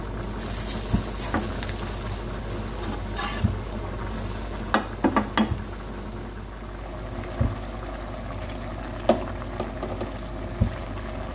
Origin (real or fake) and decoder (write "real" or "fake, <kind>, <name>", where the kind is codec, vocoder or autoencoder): real